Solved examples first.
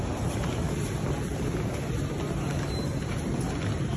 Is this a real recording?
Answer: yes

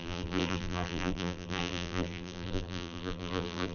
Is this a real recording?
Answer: no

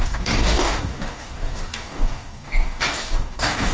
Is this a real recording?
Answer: no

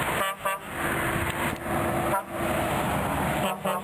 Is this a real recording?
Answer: yes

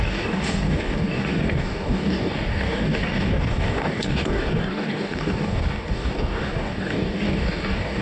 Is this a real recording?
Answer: no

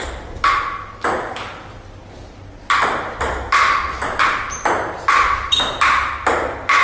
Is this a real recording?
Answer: yes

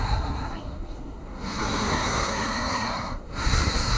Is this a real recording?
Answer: no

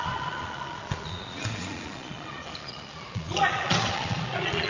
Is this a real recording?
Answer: no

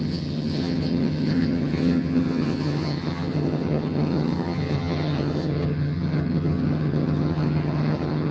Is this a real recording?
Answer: no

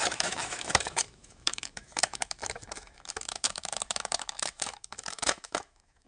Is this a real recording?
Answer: no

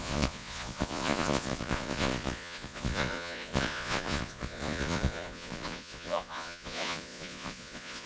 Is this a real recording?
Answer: no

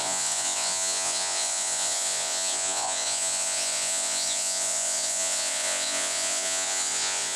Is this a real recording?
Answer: no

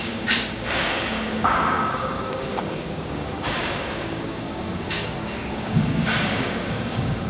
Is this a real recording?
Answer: no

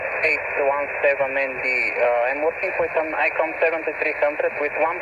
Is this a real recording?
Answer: yes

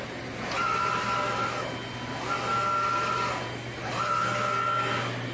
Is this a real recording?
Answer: yes